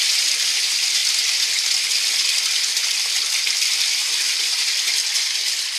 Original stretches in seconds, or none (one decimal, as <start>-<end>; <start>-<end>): 0.0-5.8